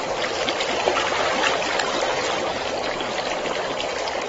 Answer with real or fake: fake